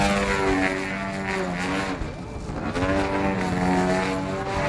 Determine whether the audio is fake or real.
real